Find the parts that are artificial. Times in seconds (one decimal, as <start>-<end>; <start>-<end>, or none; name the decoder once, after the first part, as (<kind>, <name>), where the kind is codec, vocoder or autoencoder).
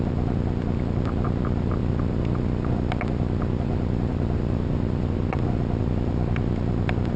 none